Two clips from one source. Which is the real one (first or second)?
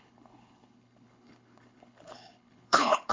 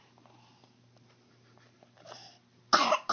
second